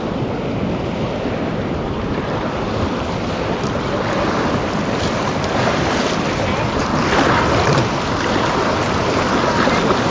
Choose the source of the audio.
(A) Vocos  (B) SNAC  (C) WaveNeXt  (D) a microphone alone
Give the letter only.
D